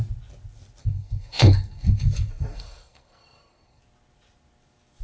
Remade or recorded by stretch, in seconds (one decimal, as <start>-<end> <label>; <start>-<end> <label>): 0.0-0.8 recorded; 0.8-3.8 remade; 3.8-5.0 recorded